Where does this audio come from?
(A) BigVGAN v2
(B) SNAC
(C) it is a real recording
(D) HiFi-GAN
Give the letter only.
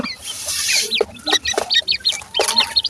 A